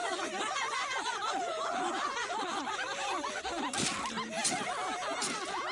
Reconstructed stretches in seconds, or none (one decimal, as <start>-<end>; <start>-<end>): 0.0-3.4